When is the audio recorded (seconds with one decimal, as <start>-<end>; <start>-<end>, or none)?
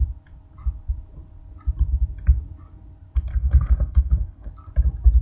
0.0-3.3; 4.5-5.2